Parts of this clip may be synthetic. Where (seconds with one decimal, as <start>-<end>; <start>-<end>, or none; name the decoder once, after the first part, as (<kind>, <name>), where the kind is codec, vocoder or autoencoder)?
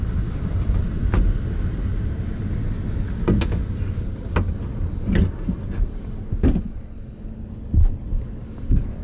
none